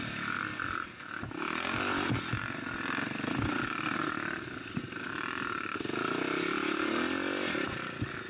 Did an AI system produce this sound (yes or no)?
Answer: no